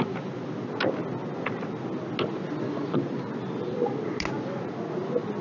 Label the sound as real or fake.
real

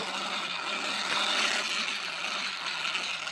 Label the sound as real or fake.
real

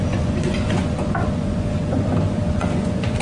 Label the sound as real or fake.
fake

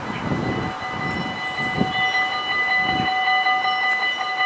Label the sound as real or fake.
real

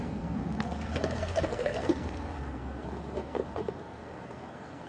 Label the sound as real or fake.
fake